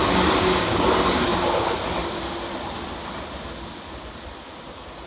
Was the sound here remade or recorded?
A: recorded